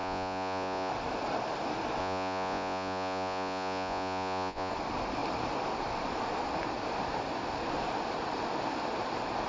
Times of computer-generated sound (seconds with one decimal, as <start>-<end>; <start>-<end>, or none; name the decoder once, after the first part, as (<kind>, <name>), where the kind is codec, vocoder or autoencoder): 0.0-0.9 (vocoder, Vocos); 2.0-4.7